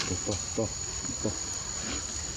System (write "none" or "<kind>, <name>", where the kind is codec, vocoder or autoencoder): none